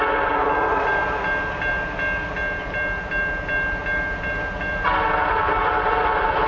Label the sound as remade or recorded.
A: recorded